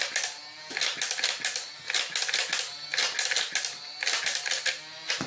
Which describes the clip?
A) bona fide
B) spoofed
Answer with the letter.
A